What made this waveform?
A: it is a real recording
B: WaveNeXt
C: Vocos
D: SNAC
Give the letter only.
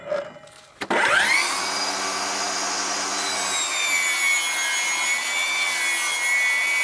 A